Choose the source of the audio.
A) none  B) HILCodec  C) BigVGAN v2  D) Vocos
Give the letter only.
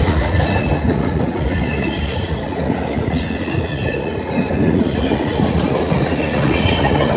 D